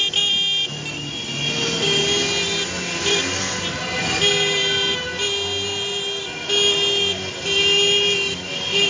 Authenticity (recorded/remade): recorded